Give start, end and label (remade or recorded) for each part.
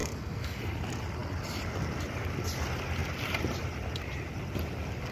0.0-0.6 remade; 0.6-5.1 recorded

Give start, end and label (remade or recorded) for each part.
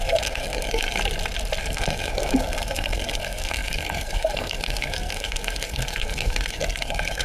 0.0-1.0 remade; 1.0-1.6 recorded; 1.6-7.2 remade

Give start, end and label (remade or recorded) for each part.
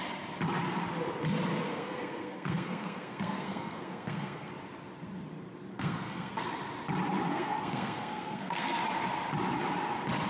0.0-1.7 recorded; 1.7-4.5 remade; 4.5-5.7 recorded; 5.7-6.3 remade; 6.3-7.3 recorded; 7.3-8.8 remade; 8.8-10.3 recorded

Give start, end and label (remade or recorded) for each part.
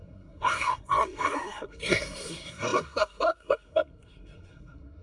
0.0-5.0 remade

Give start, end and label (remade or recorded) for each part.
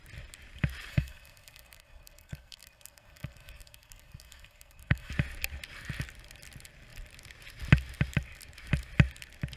0.0-0.9 recorded; 0.9-5.1 remade; 5.1-9.6 recorded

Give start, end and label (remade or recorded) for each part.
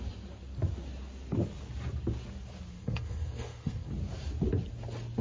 0.0-2.7 recorded; 2.7-3.9 remade; 3.9-5.2 recorded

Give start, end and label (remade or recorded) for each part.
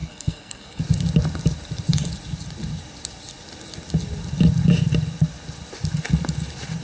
0.0-0.8 remade; 0.8-6.8 recorded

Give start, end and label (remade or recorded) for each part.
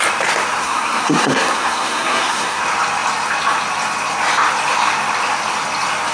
0.0-0.6 recorded; 0.6-2.6 remade; 2.6-6.1 recorded